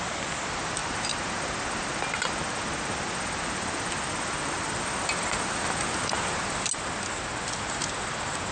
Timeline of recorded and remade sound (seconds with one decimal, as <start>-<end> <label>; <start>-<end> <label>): 0.0-8.5 recorded